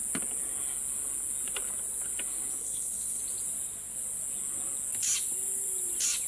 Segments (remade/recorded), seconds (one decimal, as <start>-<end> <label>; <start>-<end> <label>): 0.0-2.6 recorded; 2.6-3.2 remade; 3.2-6.3 recorded